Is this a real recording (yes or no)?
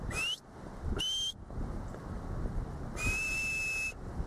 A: yes